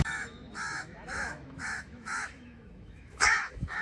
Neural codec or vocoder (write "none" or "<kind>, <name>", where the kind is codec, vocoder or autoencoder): autoencoder, DAC-VAE